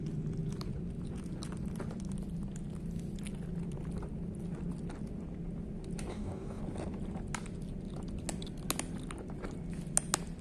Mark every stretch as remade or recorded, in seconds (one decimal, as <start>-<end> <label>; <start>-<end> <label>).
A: 0.0-6.1 recorded; 6.1-6.6 remade; 6.6-10.4 recorded